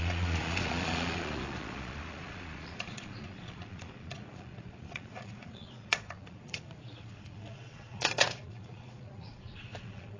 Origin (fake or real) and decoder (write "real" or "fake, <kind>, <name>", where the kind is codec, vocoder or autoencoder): fake, vocoder, Vocos